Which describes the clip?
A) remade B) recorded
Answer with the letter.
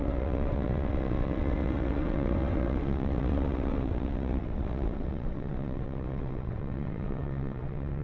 A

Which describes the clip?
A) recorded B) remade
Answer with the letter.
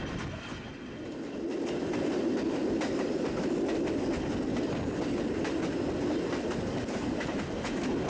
A